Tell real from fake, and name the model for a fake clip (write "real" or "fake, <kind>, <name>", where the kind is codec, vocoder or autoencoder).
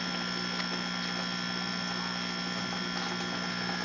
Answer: real